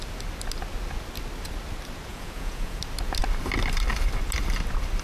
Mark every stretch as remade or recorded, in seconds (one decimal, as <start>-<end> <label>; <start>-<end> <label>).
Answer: 0.0-2.1 recorded; 2.1-2.8 remade; 2.8-5.0 recorded